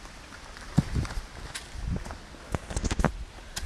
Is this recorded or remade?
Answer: recorded